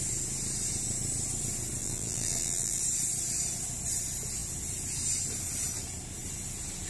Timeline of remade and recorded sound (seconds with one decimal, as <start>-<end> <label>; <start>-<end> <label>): 0.0-1.8 recorded; 1.8-2.8 remade; 2.8-6.9 recorded